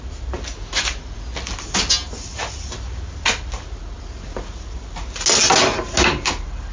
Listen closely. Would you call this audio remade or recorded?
recorded